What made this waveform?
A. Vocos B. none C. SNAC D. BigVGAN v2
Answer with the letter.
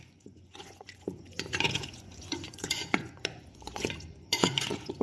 A